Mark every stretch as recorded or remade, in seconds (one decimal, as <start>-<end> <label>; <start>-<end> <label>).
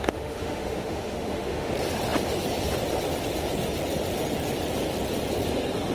0.0-1.7 remade; 1.7-5.9 recorded